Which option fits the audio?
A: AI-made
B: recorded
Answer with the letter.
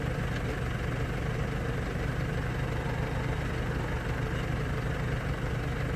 B